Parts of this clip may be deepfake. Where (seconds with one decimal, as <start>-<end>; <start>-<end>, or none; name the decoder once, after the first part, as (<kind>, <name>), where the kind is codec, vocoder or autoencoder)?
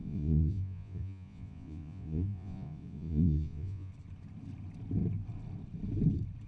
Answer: 0.0-3.9 (vocoder, Vocos)